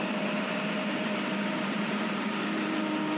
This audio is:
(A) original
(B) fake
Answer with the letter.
B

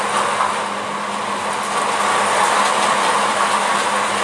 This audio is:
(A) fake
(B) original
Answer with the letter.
B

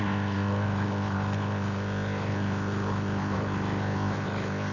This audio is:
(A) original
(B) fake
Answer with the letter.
B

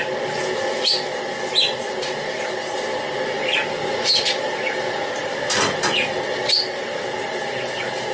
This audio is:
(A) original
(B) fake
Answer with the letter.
A